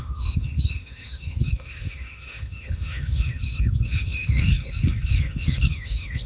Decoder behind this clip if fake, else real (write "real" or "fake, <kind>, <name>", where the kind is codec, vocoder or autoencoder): fake, autoencoder, DAC-VAE